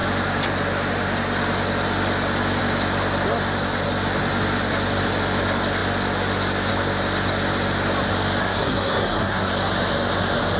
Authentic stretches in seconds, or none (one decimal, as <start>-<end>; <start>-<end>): 0.0-8.4; 9.5-10.6